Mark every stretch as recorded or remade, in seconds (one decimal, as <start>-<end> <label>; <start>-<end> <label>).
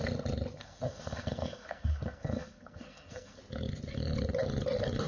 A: 0.0-0.6 recorded; 0.6-3.4 remade; 3.4-5.1 recorded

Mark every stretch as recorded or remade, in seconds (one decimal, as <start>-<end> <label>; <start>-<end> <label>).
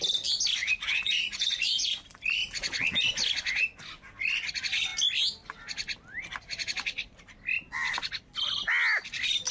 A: 0.0-0.6 recorded; 0.6-2.0 remade; 2.0-9.5 recorded